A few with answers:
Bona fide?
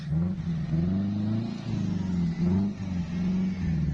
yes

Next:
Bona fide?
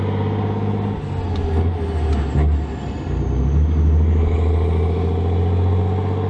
yes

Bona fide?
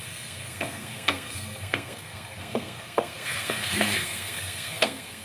no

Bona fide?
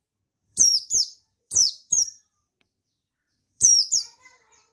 no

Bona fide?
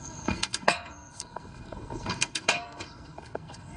no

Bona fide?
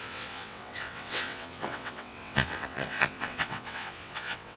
no